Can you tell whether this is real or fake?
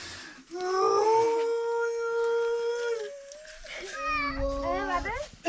real